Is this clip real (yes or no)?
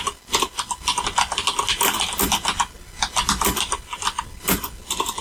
yes